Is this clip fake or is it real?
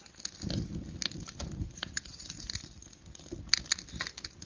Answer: real